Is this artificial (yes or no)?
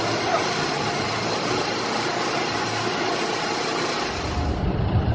no